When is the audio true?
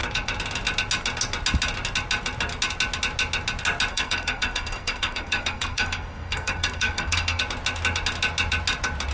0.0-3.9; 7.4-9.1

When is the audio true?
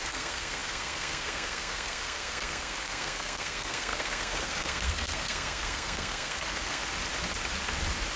6.8-8.2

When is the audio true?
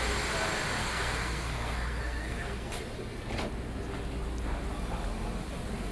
0.0-0.8; 2.8-5.9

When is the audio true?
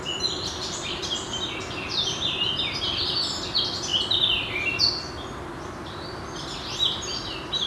0.0-7.7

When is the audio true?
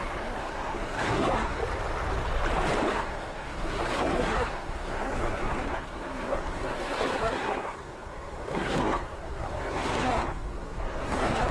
1.6-2.9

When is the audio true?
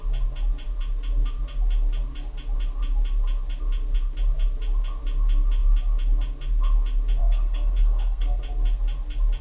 0.0-7.2; 8.4-9.4